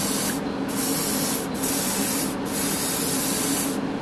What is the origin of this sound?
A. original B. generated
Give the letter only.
A